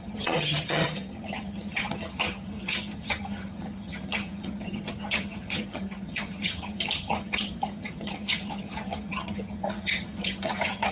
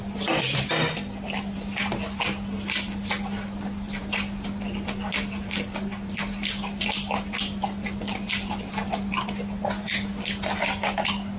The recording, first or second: second